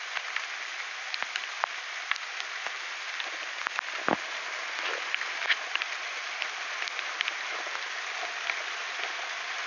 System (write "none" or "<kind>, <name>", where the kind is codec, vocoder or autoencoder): none